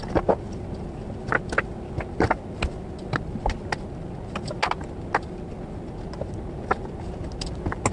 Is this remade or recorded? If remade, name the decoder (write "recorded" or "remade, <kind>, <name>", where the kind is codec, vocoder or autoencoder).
recorded